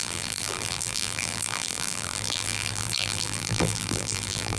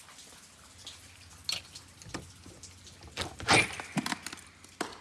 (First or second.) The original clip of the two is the second